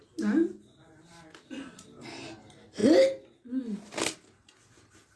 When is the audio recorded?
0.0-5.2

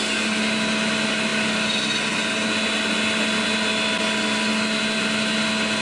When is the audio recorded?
0.0-5.8

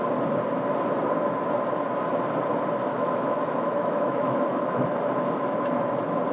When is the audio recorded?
0.0-2.9; 5.8-6.3

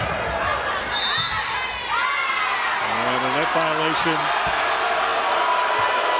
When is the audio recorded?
0.0-6.2

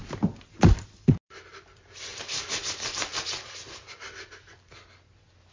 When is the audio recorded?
0.7-2.1; 3.2-5.5

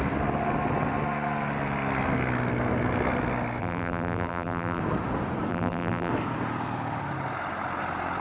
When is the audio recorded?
0.0-3.6; 4.8-5.5; 6.1-8.2

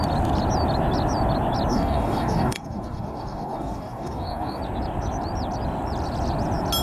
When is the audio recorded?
0.0-1.7; 4.6-6.8

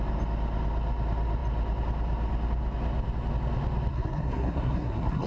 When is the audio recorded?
0.0-3.9